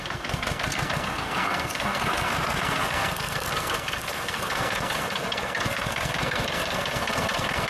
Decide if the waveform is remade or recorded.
remade